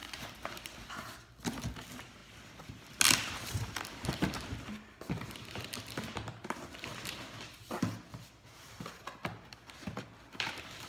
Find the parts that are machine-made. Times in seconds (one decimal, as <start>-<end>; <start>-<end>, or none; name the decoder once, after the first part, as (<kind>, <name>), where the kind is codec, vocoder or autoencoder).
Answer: 0.0-0.9 (vocoder, BigVGAN v2)